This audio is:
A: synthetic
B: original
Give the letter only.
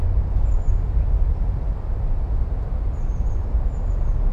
B